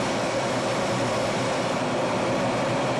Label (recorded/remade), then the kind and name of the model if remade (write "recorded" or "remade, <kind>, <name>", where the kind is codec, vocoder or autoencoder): recorded